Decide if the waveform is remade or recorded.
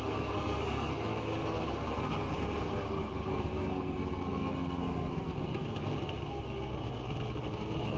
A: remade